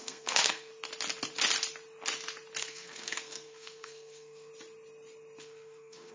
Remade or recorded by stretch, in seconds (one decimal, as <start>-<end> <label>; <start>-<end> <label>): 0.0-0.7 remade; 0.7-2.6 recorded; 2.6-4.5 remade; 4.5-5.4 recorded; 5.4-6.1 remade